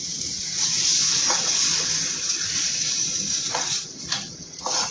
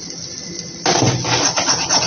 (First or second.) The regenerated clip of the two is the first